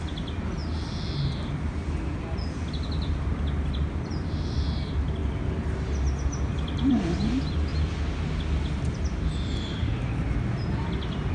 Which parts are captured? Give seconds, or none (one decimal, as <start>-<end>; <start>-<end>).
0.6-3.1; 5.2-6.9; 7.7-8.7